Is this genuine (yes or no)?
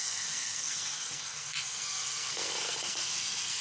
no